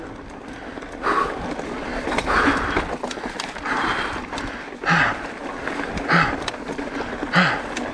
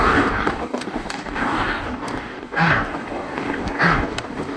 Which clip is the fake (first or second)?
second